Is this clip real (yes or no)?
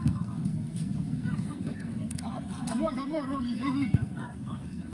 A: no